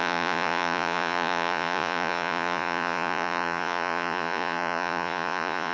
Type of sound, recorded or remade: remade